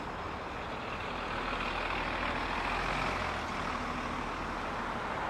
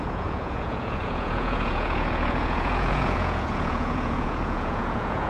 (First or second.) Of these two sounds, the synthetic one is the second